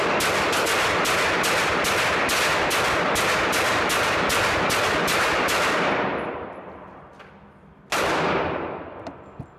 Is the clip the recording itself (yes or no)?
yes